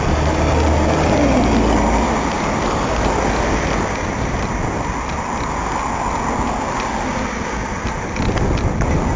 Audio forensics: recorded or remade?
recorded